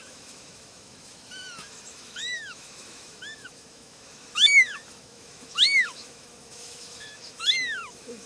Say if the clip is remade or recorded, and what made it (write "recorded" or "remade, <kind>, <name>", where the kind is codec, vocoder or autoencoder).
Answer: remade, autoencoder, DAC-VAE